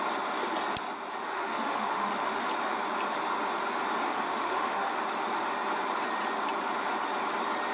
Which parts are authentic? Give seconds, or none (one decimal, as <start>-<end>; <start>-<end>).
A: 0.0-1.3; 2.4-4.1; 5.0-7.7